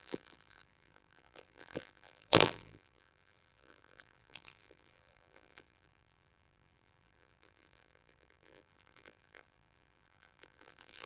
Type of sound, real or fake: fake